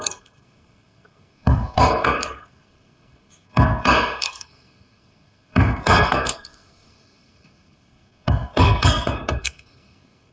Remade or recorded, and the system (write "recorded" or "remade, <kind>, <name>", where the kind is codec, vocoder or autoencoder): remade, codec, SNAC